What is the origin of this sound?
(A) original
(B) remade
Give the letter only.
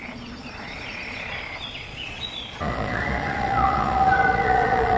B